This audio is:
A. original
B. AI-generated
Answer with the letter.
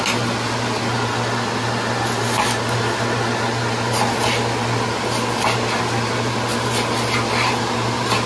A